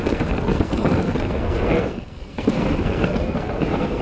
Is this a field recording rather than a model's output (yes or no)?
no